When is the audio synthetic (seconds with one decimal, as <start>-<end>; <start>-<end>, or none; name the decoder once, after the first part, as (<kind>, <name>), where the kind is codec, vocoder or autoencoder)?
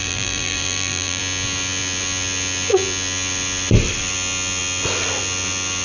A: 0.0-1.2 (vocoder, BigVGAN v2)